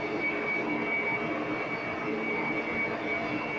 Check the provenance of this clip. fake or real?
real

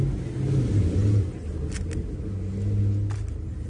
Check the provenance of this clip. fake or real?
real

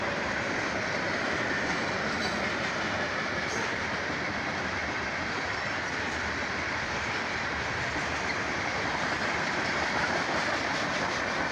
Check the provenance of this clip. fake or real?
fake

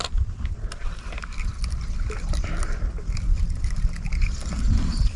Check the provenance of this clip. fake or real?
real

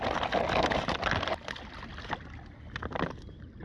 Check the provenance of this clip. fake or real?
real